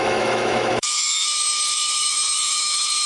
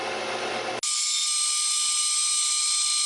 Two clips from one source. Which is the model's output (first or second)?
first